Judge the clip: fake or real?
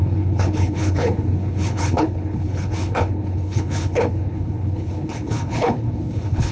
fake